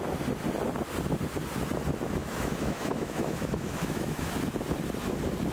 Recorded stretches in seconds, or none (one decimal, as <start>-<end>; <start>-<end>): 0.0-2.2; 4.3-5.5